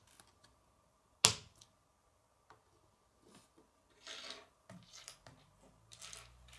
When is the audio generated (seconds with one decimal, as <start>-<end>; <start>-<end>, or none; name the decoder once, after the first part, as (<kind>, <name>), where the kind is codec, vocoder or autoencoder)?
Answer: none